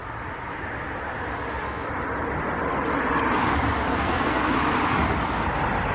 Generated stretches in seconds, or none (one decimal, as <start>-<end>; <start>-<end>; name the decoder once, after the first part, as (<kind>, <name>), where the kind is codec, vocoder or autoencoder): 3.9-4.5 (codec, SNAC)